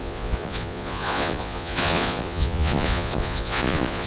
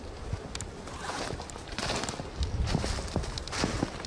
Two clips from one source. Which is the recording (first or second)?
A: second